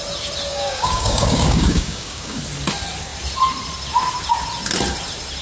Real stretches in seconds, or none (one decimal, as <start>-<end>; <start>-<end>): 0.0-0.5; 2.4-5.4